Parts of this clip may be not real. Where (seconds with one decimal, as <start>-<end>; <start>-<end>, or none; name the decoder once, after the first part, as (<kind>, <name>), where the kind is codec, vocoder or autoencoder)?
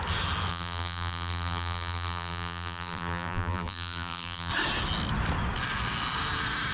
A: 0.5-4.5 (vocoder, BigVGAN v2)